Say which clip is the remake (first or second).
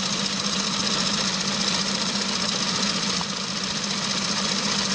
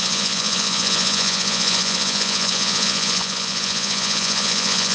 second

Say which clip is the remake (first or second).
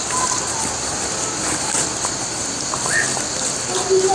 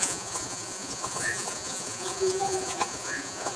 second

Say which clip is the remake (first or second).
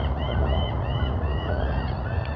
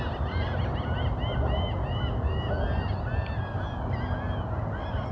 first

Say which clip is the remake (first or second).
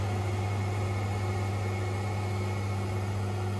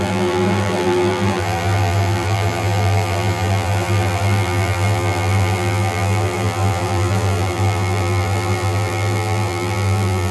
second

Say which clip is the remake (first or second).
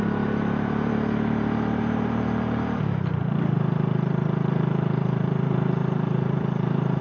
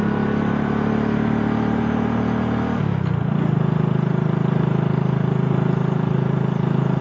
first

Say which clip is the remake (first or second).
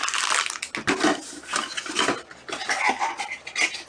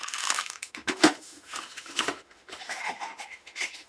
second